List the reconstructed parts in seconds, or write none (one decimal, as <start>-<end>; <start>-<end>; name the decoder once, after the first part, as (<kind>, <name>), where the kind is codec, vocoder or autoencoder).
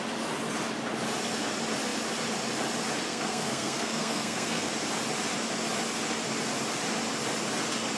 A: 3.1-4.7 (codec, SNAC)